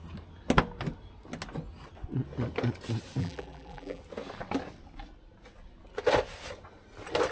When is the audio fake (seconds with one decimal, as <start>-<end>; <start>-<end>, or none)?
3.2-4.0